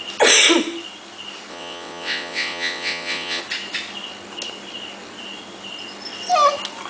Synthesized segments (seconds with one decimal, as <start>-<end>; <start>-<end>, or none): 1.5-3.4